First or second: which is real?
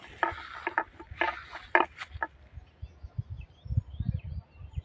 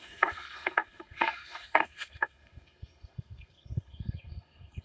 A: first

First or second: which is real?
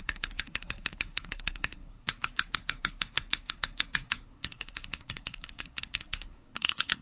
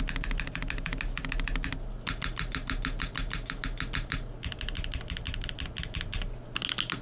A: second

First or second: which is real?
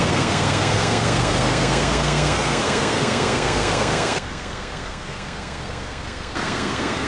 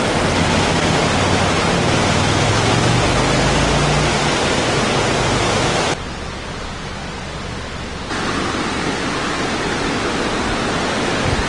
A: second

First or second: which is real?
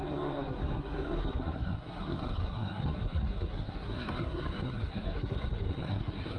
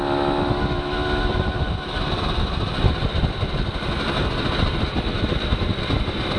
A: second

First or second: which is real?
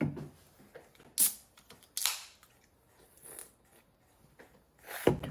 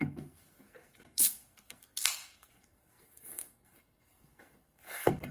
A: first